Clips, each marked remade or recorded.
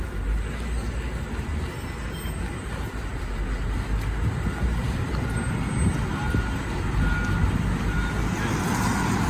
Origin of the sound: recorded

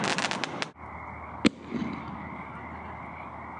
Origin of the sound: recorded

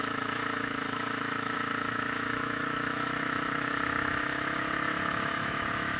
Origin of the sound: remade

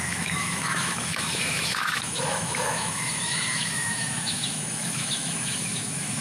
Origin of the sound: remade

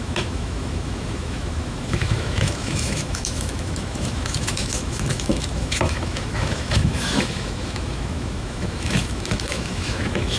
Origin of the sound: remade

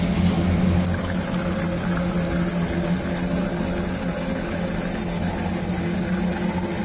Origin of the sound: recorded